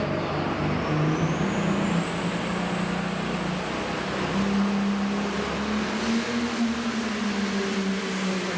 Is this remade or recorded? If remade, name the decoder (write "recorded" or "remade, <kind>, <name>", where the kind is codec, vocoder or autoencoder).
recorded